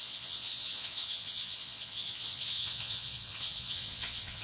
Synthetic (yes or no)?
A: yes